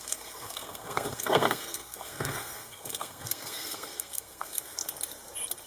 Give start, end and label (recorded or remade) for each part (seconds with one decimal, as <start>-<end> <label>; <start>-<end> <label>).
0.0-4.8 remade; 4.8-5.7 recorded